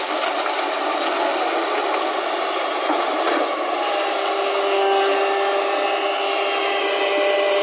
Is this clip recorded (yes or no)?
yes